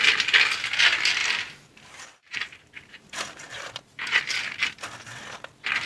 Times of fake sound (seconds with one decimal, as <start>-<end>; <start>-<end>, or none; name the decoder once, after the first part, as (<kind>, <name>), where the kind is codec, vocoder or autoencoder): 1.2-4.2 (vocoder, BigVGAN v2)